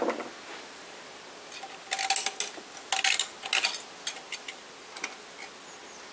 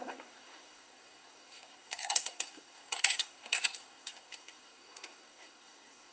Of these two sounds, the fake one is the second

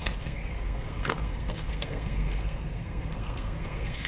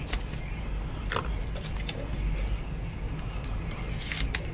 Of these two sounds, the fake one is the first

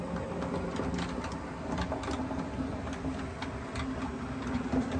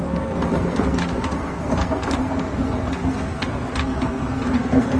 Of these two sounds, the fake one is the second